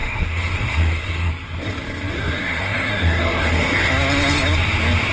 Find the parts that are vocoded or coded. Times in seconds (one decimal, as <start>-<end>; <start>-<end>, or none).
0.0-1.3; 2.1-3.9